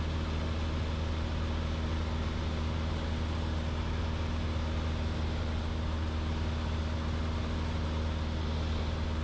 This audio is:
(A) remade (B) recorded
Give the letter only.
B